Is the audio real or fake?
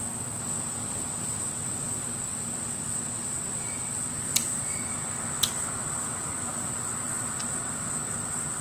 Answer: real